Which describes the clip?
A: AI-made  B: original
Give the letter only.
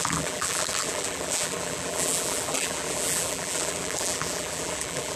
A